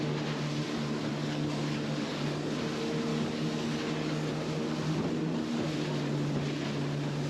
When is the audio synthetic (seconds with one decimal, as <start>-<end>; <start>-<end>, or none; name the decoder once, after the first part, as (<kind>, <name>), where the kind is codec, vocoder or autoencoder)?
1.1-2.5 (codec, DAC); 3.1-4.3